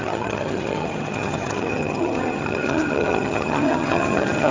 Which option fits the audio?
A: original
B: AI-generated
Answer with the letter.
B